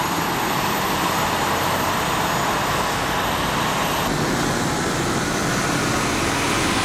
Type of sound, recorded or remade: recorded